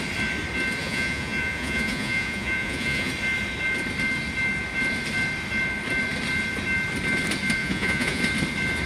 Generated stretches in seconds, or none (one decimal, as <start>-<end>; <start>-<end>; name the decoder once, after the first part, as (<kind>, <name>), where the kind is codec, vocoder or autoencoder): 0.8-3.1 (vocoder, Vocos); 7.6-8.2